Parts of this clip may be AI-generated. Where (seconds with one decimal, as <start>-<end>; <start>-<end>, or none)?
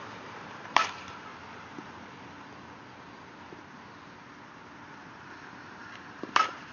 0.0-1.3; 5.0-6.7